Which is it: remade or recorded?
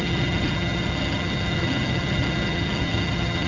remade